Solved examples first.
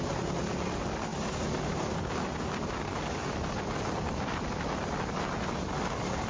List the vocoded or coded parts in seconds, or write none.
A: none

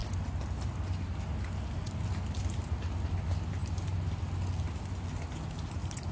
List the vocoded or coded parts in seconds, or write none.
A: none

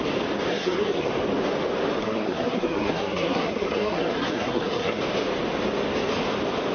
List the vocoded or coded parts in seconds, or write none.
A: 0.5-1.1 (codec, SNAC); 2.0-5.0

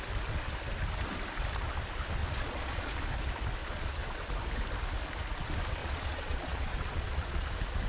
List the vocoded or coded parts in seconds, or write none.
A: 2.2-2.9 (vocoder, Vocos); 3.6-4.3; 5.8-7.5

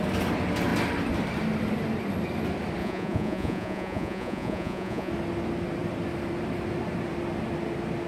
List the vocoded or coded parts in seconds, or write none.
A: 2.8-5.1 (vocoder, Vocos)

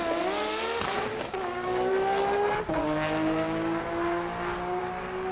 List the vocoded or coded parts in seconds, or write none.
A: 1.1-1.9 (codec, DAC); 2.8-4.8

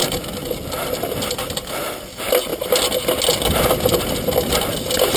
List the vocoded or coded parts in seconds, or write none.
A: none